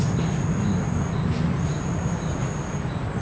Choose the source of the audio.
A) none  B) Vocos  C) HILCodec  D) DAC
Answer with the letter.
A